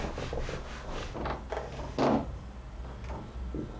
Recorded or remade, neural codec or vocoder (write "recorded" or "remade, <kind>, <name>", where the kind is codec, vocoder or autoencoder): recorded